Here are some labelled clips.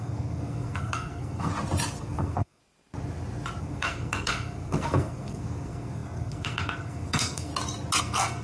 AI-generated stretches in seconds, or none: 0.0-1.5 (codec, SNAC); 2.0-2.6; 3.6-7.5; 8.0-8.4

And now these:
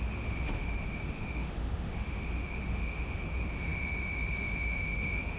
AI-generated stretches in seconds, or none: 0.0-5.4 (autoencoder, DAC-VAE)

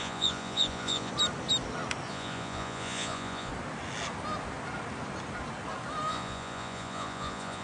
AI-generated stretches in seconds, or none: 0.0-1.1 (vocoder, Vocos); 2.1-3.5; 6.1-7.6

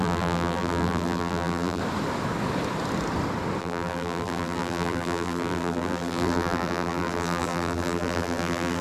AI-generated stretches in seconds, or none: 0.0-1.8 (vocoder, BigVGAN v2); 3.6-8.8